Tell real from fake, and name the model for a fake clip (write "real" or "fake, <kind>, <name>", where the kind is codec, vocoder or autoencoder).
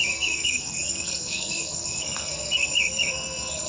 fake, codec, SNAC